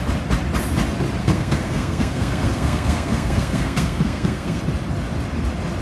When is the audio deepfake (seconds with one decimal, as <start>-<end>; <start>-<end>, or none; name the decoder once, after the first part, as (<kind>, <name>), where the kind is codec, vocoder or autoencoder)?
1.2-4.6 (codec, SNAC)